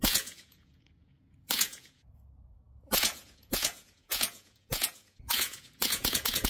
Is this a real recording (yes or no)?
no